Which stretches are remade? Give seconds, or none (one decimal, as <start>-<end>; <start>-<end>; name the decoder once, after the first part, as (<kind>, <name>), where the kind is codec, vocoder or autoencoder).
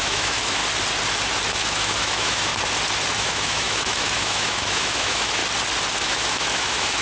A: 0.0-0.6 (autoencoder, DAC-VAE); 1.5-2.5; 3.1-5.4; 6.0-7.0